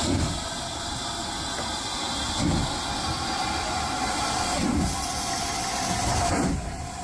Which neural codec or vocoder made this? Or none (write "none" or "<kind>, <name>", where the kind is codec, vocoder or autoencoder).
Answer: none